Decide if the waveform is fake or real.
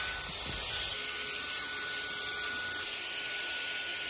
real